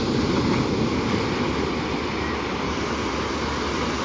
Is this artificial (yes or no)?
no